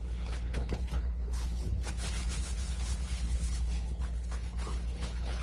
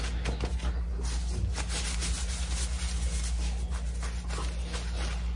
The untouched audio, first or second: second